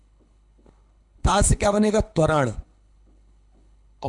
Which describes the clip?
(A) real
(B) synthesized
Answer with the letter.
B